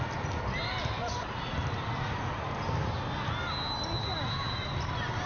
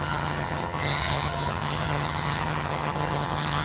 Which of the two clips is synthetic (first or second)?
second